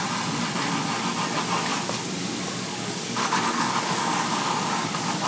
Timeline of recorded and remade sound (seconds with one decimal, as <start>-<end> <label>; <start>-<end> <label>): 0.0-1.7 recorded; 1.7-5.3 remade